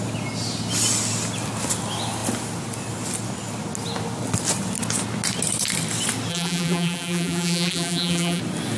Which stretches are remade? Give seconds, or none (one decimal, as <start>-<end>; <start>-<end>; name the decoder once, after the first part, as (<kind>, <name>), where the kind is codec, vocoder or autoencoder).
6.3-8.4 (vocoder, BigVGAN v2)